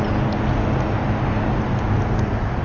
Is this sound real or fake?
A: real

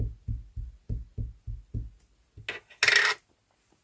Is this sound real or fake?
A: real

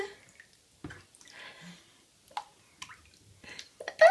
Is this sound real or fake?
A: real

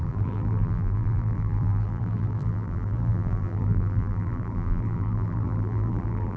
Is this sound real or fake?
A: fake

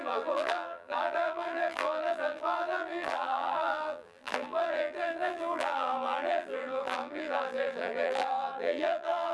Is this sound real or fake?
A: fake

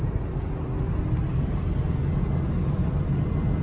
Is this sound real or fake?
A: real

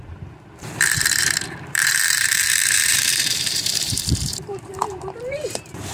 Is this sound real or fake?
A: fake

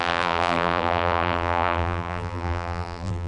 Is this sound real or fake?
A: fake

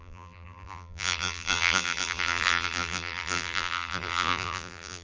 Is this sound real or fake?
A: fake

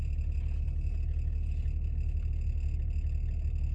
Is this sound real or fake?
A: real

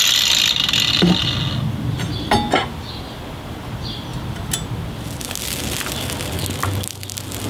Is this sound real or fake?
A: real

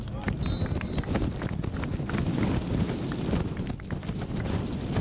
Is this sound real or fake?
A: real